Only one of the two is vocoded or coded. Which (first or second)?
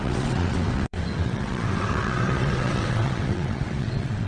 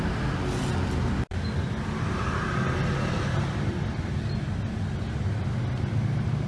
first